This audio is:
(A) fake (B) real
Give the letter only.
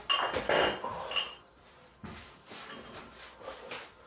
B